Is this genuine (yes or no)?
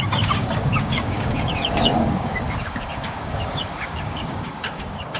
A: no